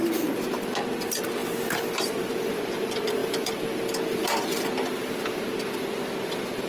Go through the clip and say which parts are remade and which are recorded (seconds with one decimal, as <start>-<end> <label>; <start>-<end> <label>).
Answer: 0.0-1.4 recorded; 1.4-2.5 remade; 2.5-3.2 recorded; 3.2-5.4 remade; 5.4-6.7 recorded